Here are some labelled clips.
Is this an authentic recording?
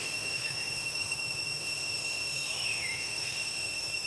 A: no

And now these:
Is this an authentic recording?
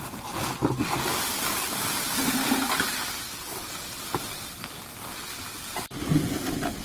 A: yes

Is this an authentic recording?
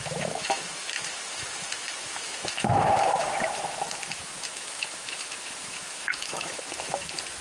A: no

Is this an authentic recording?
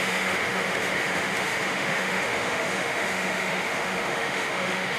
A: no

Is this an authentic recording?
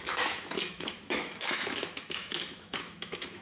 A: no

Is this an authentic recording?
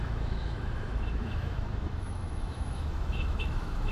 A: no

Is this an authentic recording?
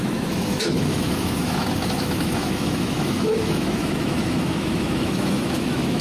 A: no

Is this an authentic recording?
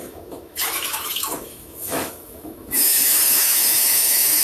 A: no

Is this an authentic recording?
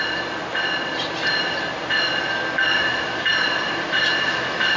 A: yes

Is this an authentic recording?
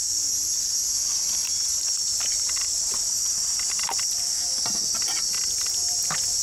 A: yes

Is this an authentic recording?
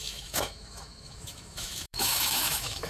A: no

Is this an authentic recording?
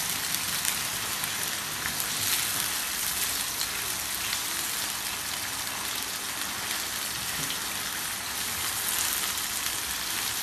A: yes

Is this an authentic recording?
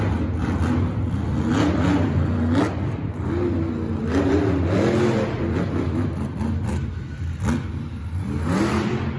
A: yes